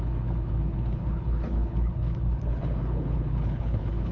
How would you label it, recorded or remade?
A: remade